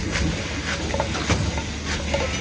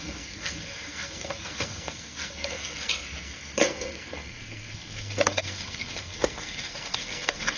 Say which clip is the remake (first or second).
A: second